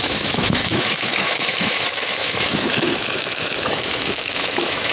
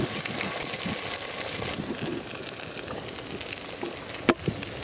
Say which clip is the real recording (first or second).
second